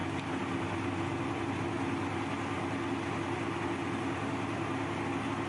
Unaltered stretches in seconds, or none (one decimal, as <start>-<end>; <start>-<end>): 0.0-5.5